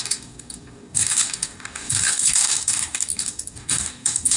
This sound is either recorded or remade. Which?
remade